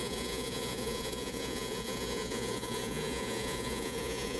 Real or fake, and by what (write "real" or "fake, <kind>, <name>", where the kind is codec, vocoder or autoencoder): fake, vocoder, Vocos